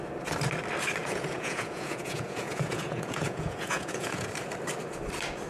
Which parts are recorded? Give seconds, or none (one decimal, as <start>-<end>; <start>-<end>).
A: 0.0-1.0; 4.3-5.5